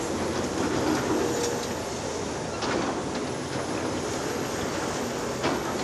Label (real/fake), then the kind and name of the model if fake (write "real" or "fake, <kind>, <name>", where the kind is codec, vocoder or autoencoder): real